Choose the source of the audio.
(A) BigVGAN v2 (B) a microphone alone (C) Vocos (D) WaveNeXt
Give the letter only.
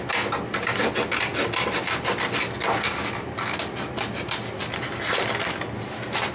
B